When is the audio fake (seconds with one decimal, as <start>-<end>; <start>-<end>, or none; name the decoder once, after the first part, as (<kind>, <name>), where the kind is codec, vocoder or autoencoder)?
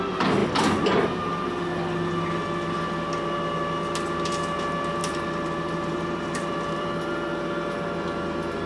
5.0-6.9 (vocoder, BigVGAN v2)